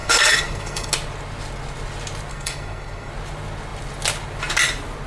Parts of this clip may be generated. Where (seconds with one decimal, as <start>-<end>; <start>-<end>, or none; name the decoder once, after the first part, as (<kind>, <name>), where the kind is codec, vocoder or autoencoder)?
0.0-0.9 (codec, SNAC); 2.3-3.1